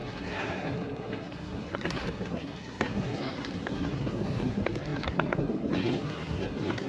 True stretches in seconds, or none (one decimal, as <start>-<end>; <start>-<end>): none